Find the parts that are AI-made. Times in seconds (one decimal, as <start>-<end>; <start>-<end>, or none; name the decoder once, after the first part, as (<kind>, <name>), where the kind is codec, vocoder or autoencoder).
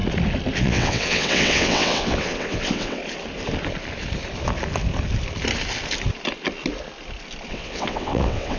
0.6-3.0 (vocoder, WaveNeXt); 7.5-8.6